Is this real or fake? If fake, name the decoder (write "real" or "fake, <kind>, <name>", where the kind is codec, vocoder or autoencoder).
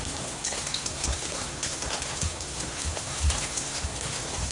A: fake, codec, SNAC